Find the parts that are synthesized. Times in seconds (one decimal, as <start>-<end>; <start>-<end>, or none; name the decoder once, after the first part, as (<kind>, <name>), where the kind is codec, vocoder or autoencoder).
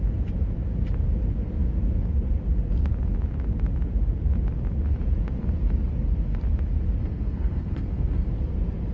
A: 7.0-8.3 (codec, SNAC)